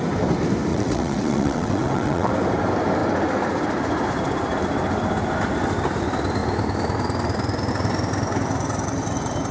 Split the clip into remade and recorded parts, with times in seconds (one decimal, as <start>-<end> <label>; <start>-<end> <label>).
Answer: 0.0-0.7 recorded; 0.7-2.3 remade; 2.3-9.5 recorded